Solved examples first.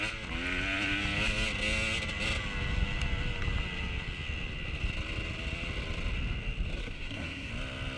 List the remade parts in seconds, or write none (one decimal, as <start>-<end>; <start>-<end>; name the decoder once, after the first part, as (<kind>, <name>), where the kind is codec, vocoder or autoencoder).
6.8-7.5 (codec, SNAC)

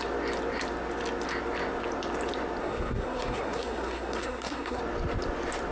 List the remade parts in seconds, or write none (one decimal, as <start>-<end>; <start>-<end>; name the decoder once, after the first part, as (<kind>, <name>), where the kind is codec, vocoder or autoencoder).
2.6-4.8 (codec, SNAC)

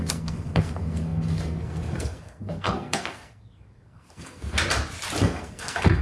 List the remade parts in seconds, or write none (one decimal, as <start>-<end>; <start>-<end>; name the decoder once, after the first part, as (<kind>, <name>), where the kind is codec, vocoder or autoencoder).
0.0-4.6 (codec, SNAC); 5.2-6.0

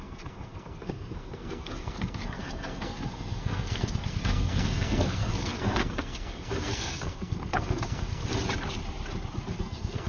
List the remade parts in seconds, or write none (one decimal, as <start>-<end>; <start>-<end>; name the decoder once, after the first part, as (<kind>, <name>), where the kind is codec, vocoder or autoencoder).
0.0-8.2 (codec, SNAC); 9.6-10.1

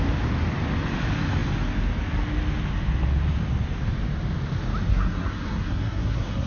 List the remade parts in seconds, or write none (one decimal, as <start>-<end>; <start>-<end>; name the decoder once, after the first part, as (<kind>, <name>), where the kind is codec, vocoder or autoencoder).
4.9-6.5 (codec, SNAC)

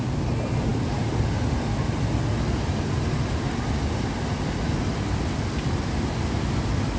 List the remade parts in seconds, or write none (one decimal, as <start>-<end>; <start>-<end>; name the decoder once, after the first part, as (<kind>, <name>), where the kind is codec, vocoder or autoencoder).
none